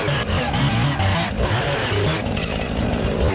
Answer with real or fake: real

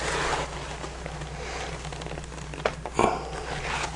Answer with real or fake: real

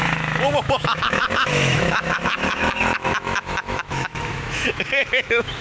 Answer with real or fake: fake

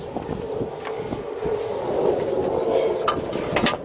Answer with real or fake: real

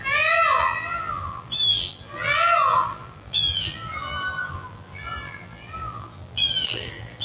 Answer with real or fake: fake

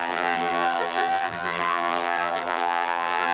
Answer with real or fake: fake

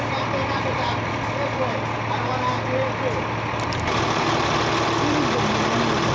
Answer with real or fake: real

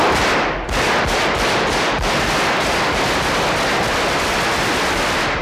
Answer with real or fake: real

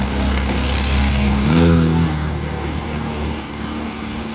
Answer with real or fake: fake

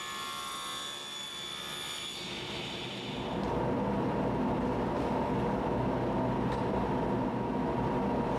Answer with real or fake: real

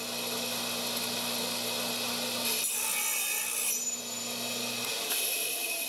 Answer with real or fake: real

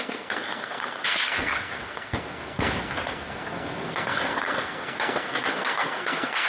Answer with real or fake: fake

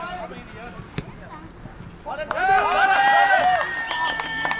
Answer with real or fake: real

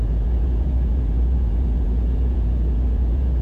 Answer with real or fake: fake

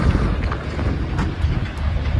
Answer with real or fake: real